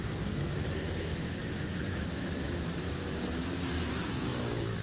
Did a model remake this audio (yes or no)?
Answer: yes